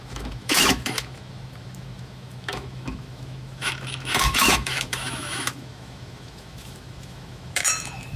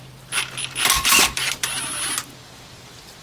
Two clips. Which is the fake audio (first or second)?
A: first